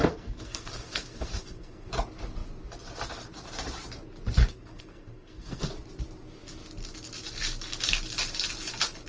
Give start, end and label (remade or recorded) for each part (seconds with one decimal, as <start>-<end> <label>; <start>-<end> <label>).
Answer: 0.0-1.9 remade; 1.9-4.4 recorded; 4.4-5.7 remade; 5.7-9.1 recorded